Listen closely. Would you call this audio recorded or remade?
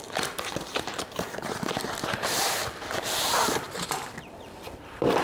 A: remade